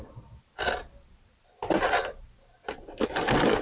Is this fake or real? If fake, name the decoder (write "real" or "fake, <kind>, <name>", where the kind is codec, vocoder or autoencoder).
real